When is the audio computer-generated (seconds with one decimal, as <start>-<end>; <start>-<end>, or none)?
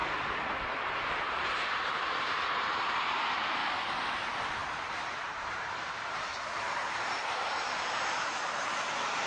0.0-3.6; 4.1-9.3